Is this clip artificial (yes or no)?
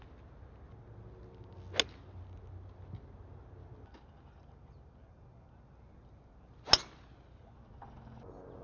no